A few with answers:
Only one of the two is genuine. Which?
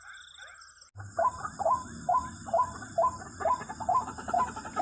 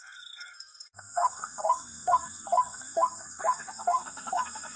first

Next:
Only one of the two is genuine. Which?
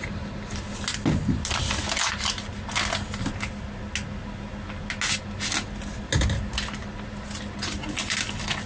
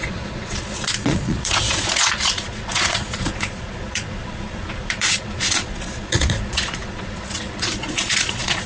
first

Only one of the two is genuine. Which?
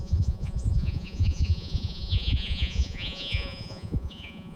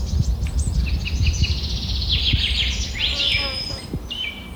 second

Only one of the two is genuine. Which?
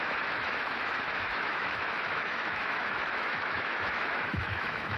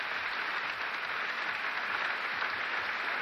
second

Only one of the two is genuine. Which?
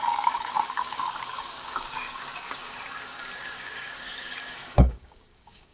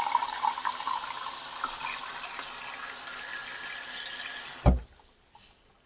second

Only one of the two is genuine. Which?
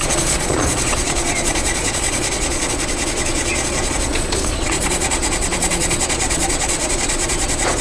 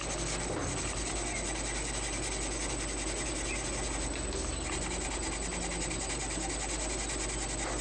second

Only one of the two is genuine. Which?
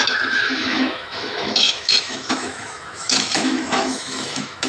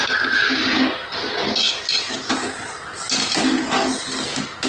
second